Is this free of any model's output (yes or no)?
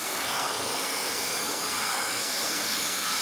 no